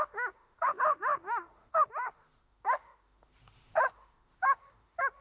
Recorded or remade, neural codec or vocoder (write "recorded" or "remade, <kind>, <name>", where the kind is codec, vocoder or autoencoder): remade, autoencoder, DAC-VAE